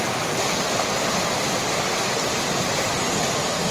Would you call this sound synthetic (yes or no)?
no